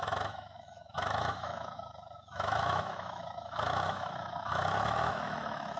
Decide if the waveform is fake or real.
fake